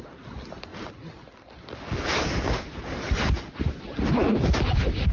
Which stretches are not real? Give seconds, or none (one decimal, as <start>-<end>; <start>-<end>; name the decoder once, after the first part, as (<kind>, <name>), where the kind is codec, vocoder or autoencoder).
none